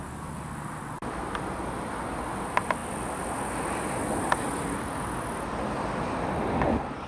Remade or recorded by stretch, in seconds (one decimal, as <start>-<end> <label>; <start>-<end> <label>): 0.0-7.1 recorded